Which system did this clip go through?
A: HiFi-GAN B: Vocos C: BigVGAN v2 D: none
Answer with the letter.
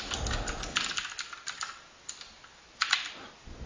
D